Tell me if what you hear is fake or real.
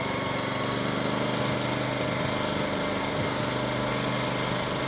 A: real